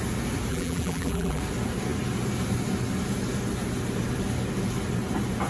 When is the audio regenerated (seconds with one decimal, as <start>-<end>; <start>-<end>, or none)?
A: 0.5-1.4